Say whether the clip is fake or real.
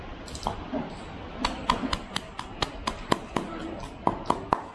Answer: real